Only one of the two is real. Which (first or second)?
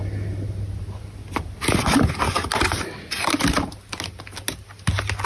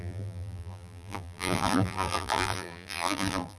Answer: first